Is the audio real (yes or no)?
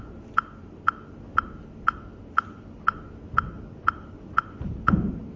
yes